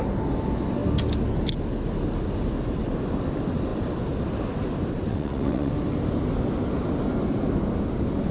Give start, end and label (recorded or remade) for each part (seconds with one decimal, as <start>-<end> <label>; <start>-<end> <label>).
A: 0.0-5.1 recorded; 5.1-5.7 remade; 5.7-8.3 recorded

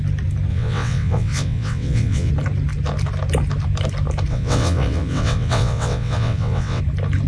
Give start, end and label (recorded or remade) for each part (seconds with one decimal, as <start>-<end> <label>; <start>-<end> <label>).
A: 0.0-0.5 recorded; 0.5-2.3 remade; 2.3-4.3 recorded; 4.3-6.8 remade; 6.8-7.3 recorded